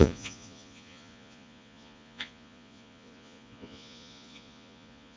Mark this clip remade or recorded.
remade